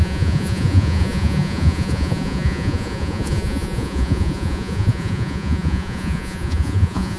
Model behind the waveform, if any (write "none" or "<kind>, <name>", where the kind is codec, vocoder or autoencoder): vocoder, Vocos